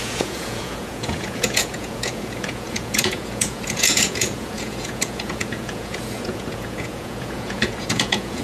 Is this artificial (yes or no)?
yes